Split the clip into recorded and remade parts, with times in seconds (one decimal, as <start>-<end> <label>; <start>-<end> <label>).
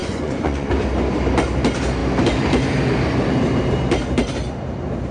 0.0-0.7 remade; 0.7-5.1 recorded